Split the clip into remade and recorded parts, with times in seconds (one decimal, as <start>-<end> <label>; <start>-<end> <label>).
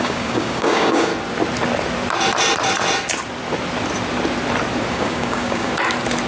0.0-1.1 remade; 1.1-4.9 recorded; 4.9-5.7 remade; 5.7-6.3 recorded